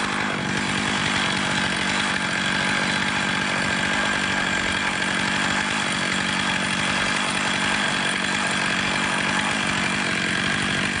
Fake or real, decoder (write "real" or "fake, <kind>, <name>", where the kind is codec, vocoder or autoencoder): real